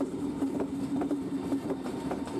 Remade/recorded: remade